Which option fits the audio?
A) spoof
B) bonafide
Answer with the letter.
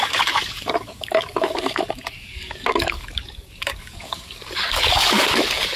A